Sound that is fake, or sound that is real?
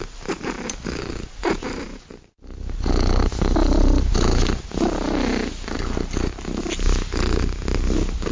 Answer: real